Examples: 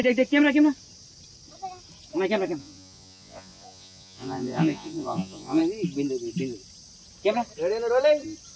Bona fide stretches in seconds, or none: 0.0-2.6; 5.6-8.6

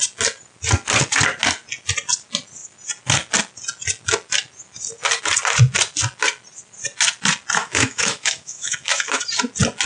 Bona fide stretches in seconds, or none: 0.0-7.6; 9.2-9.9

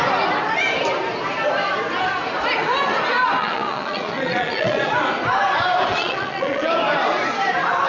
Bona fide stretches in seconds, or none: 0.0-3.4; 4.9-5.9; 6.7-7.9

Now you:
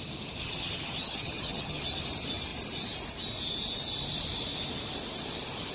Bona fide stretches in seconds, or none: 0.0-0.4; 1.8-5.7

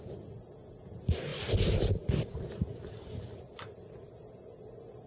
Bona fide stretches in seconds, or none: 0.0-5.1

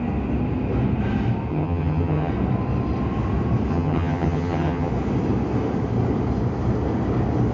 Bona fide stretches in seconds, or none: 0.0-1.5; 2.3-3.7; 4.9-7.5

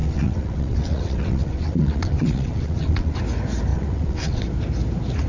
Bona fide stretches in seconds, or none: 3.2-3.7; 4.4-5.3

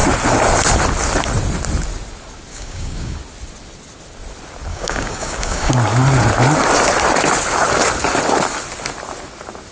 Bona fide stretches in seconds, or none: 0.0-2.5; 3.2-4.7; 5.7-9.7